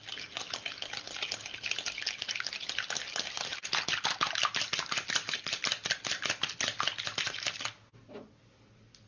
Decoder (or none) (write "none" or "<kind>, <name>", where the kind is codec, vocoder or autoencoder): none